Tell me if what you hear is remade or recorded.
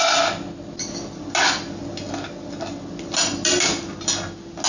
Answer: recorded